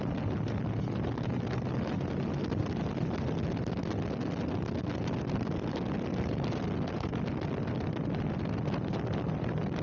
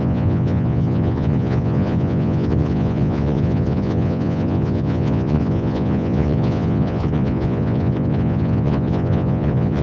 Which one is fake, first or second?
second